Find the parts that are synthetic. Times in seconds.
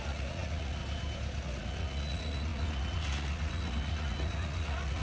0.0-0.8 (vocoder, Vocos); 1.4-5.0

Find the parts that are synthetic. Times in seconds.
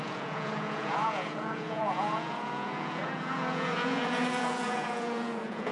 0.0-5.7 (vocoder, Vocos)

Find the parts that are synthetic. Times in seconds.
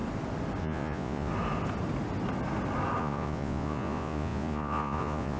0.6-1.3 (vocoder, Vocos); 3.0-5.4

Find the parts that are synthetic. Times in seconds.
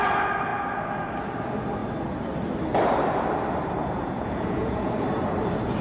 3.8-4.9 (vocoder, Vocos)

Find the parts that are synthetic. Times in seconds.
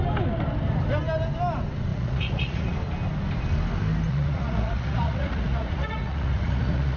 1.9-2.7 (vocoder, Vocos); 4.1-7.0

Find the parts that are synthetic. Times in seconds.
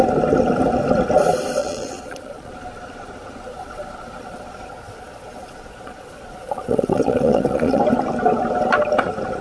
1.6-2.5 (vocoder, Vocos); 3.5-7.8